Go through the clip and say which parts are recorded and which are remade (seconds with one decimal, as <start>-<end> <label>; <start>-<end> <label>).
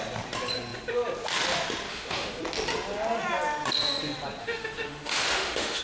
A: 0.0-1.9 recorded; 1.9-2.4 remade; 2.4-4.4 recorded; 4.4-5.8 remade